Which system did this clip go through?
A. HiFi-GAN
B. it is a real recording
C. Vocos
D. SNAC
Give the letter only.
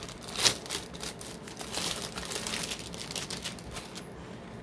B